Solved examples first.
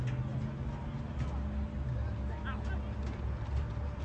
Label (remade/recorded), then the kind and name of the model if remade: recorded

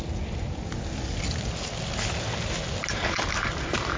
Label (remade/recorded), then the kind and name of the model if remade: recorded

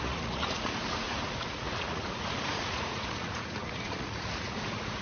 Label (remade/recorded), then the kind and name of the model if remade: remade, vocoder, Vocos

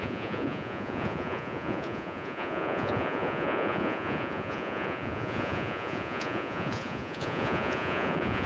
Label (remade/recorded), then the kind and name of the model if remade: remade, vocoder, Vocos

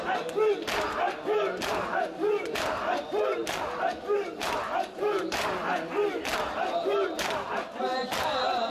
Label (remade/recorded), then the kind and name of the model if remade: recorded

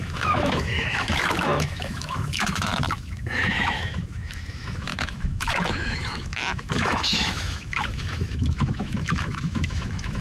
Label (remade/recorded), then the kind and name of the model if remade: remade, autoencoder, DAC-VAE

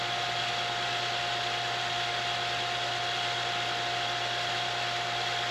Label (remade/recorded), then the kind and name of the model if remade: recorded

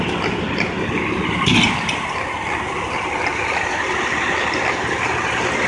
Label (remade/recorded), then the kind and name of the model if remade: recorded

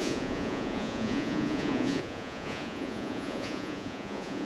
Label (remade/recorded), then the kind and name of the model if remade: remade, vocoder, Vocos